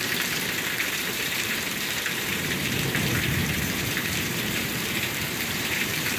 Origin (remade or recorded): remade